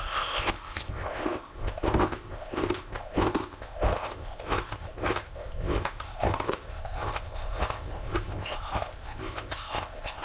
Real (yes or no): no